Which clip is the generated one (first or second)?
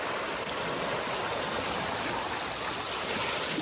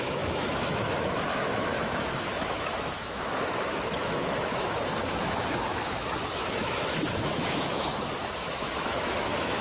second